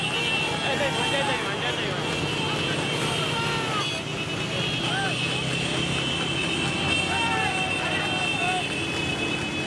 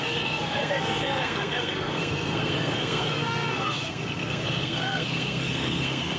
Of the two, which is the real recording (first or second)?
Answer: first